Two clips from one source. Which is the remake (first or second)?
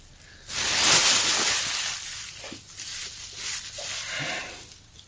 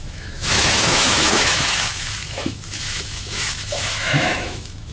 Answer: second